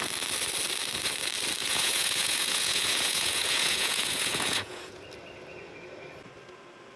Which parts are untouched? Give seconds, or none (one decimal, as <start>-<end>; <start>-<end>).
0.0-1.6; 5.0-7.0